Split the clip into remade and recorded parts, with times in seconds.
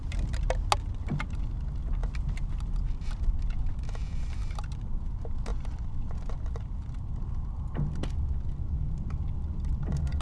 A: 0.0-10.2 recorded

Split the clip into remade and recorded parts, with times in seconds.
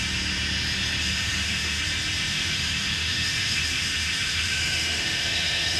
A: 0.0-1.0 recorded; 1.0-1.8 remade; 1.8-2.3 recorded; 2.3-5.8 remade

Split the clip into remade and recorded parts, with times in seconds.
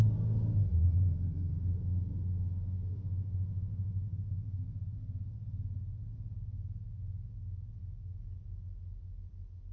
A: 0.0-1.5 recorded; 1.5-4.3 remade; 4.3-9.7 recorded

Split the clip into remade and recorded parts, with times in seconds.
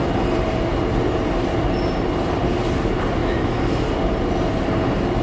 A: 0.0-3.2 recorded; 3.2-3.9 remade; 3.9-5.2 recorded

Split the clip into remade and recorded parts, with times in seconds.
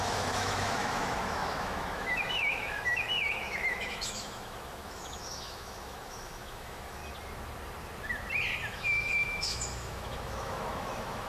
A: 0.0-7.0 remade; 7.0-8.7 recorded; 8.7-11.3 remade